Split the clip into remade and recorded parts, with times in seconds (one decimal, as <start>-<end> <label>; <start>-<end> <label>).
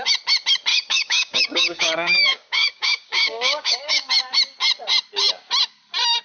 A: 0.0-0.7 recorded; 0.7-4.1 remade; 4.1-6.2 recorded